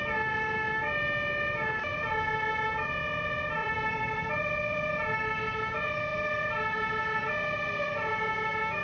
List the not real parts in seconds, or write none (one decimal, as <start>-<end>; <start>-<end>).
3.6-4.9; 6.1-7.3